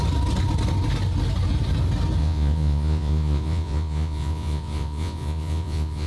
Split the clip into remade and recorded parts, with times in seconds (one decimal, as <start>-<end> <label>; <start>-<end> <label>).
0.0-2.2 recorded; 2.2-6.1 remade